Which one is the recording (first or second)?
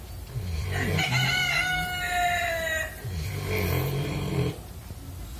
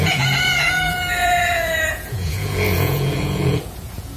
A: first